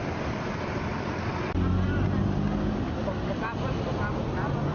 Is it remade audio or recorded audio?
recorded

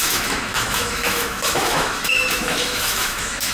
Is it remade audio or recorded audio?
remade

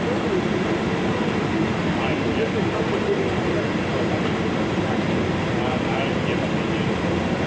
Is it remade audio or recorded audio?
recorded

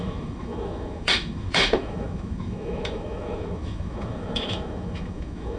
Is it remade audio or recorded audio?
remade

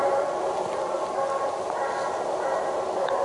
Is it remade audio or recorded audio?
recorded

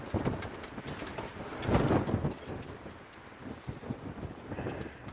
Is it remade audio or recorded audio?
recorded